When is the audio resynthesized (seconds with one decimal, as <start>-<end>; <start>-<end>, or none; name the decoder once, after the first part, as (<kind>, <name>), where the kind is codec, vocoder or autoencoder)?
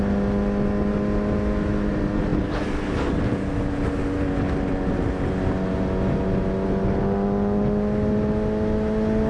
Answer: none